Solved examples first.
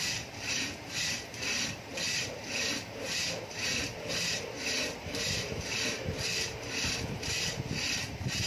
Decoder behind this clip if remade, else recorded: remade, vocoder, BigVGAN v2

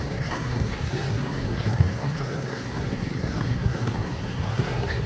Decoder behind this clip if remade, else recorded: remade, codec, SNAC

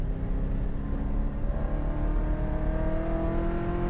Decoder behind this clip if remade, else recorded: recorded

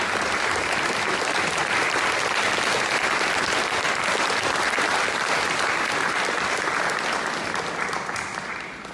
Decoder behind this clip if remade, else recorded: recorded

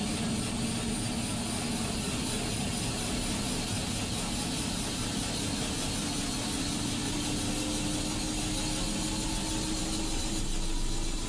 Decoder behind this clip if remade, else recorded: recorded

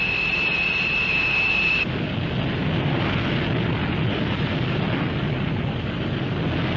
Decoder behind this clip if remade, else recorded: recorded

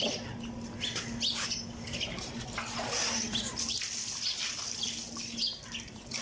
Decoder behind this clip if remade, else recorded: recorded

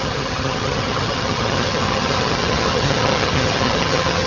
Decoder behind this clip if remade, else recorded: remade, vocoder, HiFi-GAN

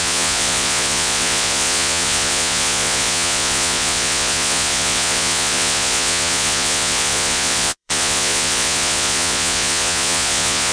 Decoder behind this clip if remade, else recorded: remade, vocoder, Vocos